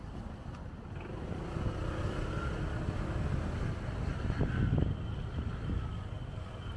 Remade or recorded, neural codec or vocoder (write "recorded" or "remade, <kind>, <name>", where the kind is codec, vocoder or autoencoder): recorded